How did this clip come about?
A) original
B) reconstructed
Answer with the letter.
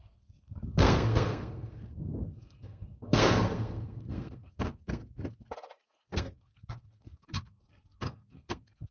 B